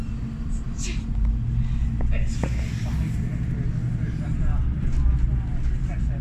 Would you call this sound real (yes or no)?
yes